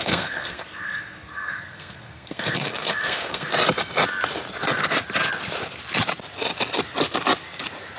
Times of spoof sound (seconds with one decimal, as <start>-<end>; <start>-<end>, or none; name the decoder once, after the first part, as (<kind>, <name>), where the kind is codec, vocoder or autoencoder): 0.0-3.5 (codec, SNAC)